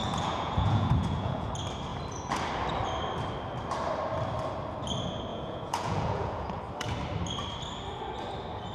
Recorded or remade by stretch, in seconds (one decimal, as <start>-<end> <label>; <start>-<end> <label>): 0.0-1.5 remade; 1.5-5.3 recorded; 5.3-6.6 remade; 6.6-8.7 recorded